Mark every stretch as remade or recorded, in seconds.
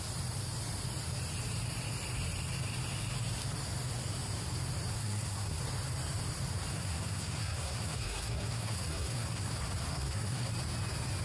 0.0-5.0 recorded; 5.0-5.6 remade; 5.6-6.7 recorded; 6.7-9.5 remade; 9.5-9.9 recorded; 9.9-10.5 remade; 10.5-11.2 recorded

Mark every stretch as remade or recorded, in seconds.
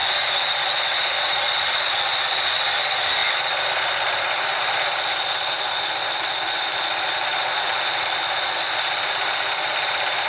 0.0-10.3 recorded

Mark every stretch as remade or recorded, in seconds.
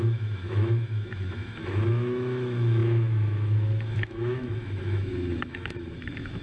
0.0-6.4 remade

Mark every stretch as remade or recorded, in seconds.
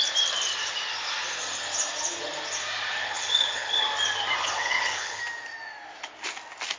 0.0-3.0 recorded; 3.0-3.8 remade; 3.8-4.4 recorded; 4.4-5.2 remade; 5.2-6.8 recorded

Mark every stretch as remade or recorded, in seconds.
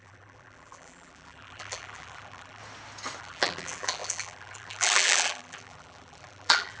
0.0-2.6 remade; 2.6-3.2 recorded; 3.2-6.8 remade